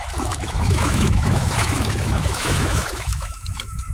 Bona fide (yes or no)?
no